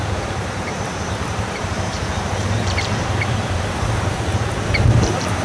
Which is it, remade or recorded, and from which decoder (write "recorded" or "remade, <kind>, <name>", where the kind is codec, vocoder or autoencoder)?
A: remade, vocoder, BigVGAN v2